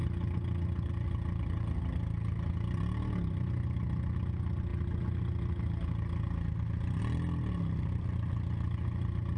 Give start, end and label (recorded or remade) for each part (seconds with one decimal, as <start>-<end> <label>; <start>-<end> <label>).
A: 0.0-9.4 recorded

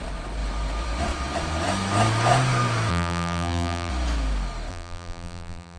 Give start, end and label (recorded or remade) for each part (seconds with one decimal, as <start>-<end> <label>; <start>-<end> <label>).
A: 0.0-2.9 recorded; 2.9-3.9 remade; 3.9-4.7 recorded; 4.7-5.8 remade

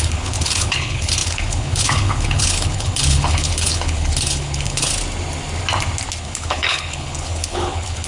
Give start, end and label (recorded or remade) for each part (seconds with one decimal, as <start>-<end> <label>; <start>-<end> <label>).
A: 0.0-4.9 remade; 4.9-6.2 recorded; 6.2-8.1 remade